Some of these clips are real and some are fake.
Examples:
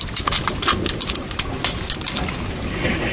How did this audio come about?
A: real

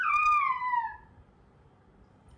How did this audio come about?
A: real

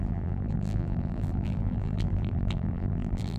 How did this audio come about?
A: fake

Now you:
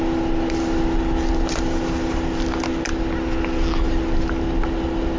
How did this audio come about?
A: real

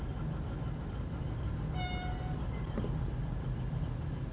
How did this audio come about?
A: real